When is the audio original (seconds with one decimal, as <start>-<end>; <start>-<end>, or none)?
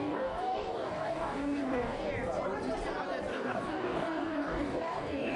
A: 2.1-3.3